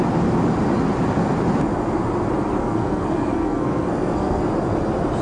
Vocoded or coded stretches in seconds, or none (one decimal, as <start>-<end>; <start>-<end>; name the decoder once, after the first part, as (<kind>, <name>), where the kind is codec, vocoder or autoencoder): 2.6-4.4 (codec, SNAC)